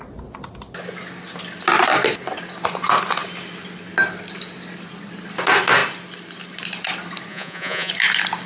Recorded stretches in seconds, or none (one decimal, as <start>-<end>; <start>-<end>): 0.0-7.3; 7.9-8.5